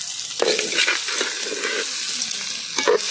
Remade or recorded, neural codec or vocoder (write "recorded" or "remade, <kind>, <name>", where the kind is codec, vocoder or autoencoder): recorded